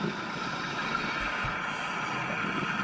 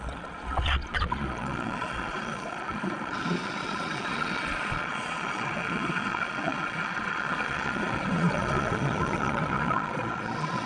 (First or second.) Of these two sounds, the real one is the first